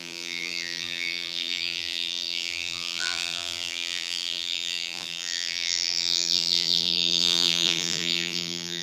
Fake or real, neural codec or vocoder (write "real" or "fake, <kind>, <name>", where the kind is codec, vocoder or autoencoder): fake, vocoder, BigVGAN v2